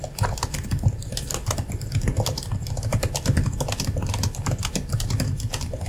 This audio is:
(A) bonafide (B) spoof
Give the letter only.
A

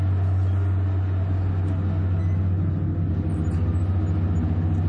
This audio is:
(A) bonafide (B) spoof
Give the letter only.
A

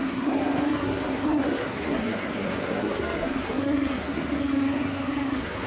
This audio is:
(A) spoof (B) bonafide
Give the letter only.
A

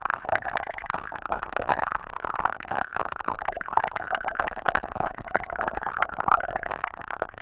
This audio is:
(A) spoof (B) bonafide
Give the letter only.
A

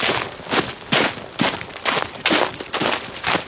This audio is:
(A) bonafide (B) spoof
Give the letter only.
A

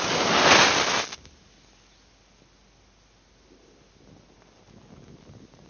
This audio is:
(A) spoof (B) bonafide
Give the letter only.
B